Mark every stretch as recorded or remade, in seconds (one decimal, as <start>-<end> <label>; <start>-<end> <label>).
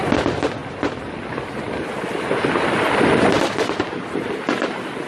0.0-5.1 recorded